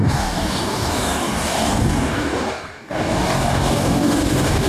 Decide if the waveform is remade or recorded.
remade